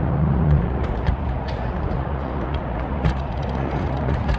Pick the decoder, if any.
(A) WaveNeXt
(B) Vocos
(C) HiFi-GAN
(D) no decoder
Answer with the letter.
B